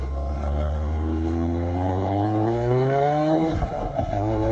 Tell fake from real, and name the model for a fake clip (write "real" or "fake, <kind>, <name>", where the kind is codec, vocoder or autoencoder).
fake, codec, SNAC